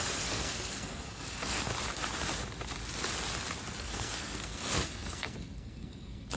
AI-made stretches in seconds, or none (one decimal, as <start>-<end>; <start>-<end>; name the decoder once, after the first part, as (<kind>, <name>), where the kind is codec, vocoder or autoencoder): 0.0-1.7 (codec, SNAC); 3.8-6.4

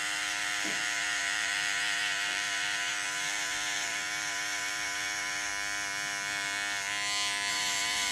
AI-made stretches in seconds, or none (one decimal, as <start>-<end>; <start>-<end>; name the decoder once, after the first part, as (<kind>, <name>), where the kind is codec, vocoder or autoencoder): 0.0-5.5 (vocoder, BigVGAN v2); 7.5-8.1

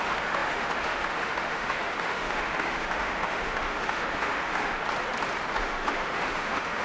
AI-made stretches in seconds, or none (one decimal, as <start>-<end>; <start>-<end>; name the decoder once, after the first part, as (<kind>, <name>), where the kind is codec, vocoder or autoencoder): 0.0-4.8 (autoencoder, DAC-VAE); 5.6-6.8

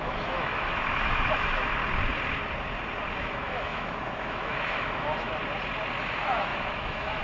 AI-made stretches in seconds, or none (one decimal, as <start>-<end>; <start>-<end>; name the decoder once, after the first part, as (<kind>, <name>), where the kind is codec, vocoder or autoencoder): 0.0-1.8 (autoencoder, DAC-VAE); 3.2-5.4; 6.0-7.2

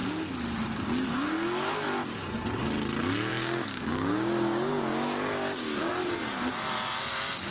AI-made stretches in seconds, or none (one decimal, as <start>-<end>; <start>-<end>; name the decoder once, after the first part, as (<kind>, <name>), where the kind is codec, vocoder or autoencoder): 3.3-5.9 (codec, DAC)

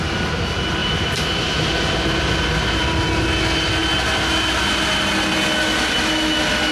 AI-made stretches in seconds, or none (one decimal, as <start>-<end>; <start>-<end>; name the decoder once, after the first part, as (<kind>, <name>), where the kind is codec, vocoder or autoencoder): 0.8-1.4 (vocoder, BigVGAN v2)

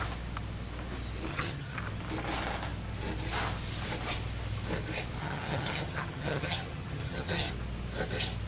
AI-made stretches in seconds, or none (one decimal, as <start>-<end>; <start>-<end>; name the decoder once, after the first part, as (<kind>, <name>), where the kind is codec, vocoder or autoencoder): 1.3-1.8 (vocoder, HiFi-GAN); 5.2-7.5

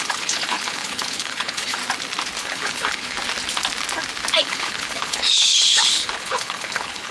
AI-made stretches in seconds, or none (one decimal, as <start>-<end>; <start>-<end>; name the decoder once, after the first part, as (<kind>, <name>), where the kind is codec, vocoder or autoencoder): 0.0-1.8 (codec, HILCodec); 2.4-3.2; 4.4-7.1